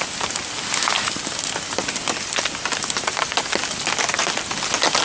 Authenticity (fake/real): real